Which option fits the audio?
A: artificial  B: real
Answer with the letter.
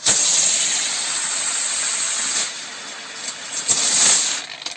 B